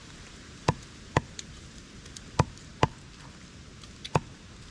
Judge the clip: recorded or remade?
recorded